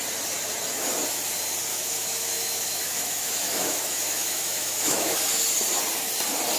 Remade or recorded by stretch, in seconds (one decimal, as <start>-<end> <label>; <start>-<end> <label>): 0.0-1.7 recorded; 1.7-5.4 remade; 5.4-6.6 recorded